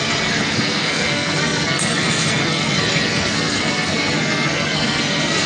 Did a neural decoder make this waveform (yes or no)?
yes